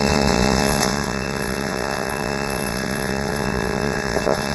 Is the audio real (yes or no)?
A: no